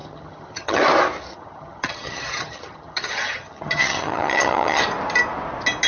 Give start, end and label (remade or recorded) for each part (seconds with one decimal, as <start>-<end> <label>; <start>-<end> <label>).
0.0-0.8 remade; 0.8-1.3 recorded; 1.3-4.8 remade; 4.8-5.9 recorded